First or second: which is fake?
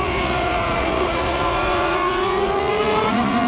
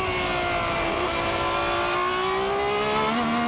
first